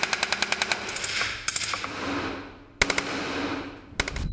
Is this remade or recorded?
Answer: recorded